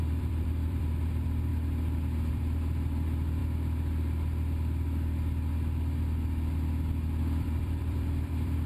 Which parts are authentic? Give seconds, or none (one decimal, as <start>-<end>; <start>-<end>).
1.5-2.3; 3.4-7.2